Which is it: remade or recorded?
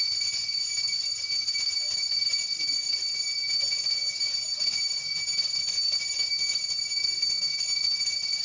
recorded